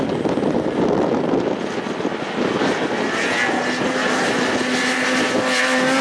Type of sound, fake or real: real